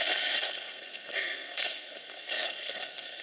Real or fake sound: fake